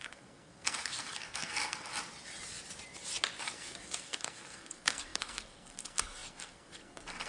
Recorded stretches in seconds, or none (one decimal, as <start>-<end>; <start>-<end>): 1.9-3.4